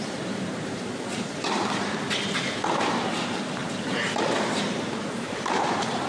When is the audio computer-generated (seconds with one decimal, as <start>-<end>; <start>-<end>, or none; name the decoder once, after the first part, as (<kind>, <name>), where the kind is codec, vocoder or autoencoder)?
0.0-3.6 (vocoder, BigVGAN v2); 4.2-6.1